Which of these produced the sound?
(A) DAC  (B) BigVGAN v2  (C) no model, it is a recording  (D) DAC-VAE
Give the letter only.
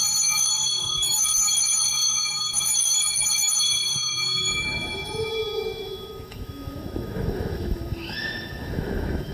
D